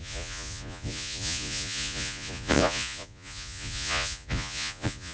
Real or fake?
fake